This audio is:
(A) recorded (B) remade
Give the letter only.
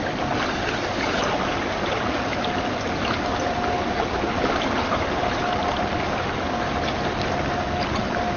A